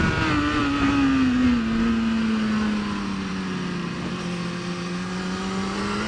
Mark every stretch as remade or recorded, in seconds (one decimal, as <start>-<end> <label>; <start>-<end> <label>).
0.0-6.1 recorded